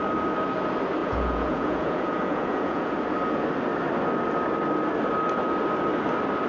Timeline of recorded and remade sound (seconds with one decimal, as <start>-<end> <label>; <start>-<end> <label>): 0.0-1.0 recorded; 1.0-2.9 remade; 2.9-6.5 recorded

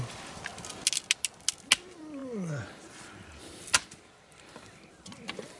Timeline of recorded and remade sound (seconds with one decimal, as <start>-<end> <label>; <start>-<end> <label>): 0.0-5.6 recorded